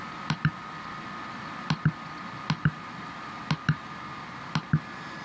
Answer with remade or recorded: recorded